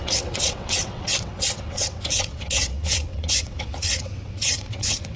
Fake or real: fake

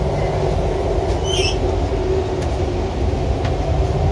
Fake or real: real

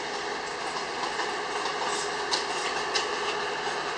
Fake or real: real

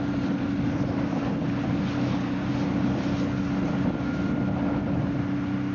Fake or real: real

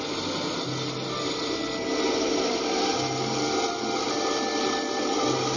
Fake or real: real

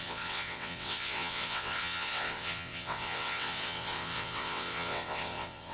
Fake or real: fake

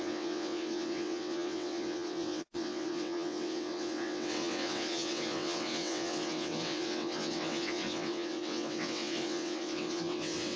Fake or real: fake